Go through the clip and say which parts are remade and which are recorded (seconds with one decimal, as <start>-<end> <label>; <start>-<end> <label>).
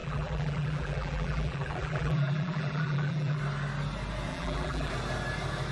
0.0-3.4 remade; 3.4-4.3 recorded; 4.3-4.9 remade; 4.9-5.7 recorded